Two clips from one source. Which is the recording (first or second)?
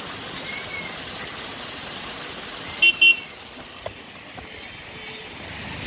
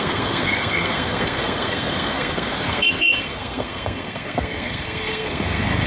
first